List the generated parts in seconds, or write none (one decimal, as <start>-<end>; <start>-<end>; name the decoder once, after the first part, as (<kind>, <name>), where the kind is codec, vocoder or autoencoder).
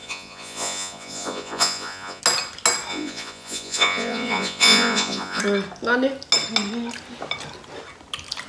0.0-2.2 (vocoder, Vocos); 2.9-5.4